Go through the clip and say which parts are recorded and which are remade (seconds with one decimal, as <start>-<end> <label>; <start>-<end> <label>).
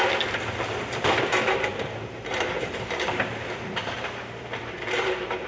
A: 0.0-1.7 recorded; 1.7-3.3 remade; 3.3-3.8 recorded; 3.8-5.5 remade